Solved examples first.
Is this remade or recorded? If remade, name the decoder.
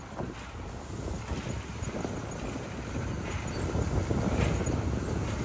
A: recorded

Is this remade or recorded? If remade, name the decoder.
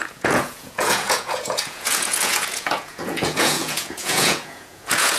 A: remade, vocoder, Vocos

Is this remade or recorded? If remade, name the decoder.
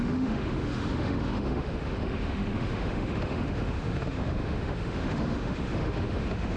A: remade, autoencoder, DAC-VAE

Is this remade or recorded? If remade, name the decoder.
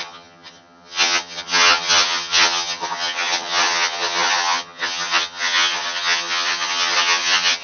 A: remade, vocoder, HiFi-GAN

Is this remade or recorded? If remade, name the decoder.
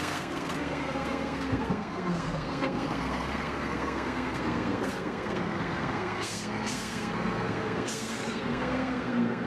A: remade, codec, SNAC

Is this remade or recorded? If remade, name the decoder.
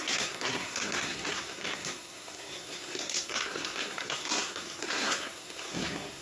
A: remade, codec, SNAC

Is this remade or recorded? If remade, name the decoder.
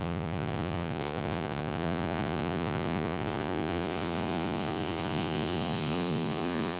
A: remade, vocoder, Vocos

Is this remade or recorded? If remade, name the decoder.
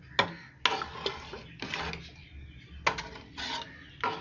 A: recorded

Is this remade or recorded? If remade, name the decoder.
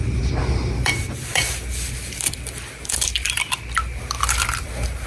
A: remade, vocoder, BigVGAN v2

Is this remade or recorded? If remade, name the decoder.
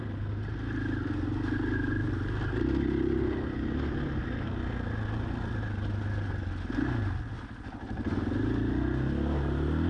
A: recorded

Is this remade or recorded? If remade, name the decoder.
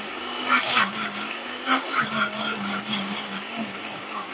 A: remade, codec, DAC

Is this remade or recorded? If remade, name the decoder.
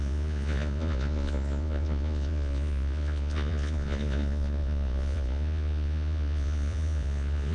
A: remade, vocoder, Vocos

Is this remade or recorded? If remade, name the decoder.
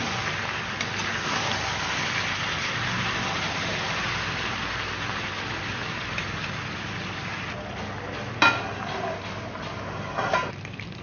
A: remade, vocoder, BigVGAN v2